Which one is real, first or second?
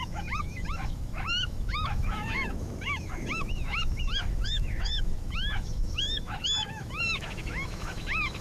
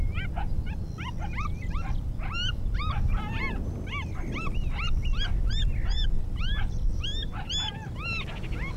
second